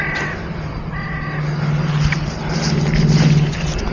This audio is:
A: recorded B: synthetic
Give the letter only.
A